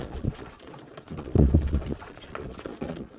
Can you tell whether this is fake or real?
fake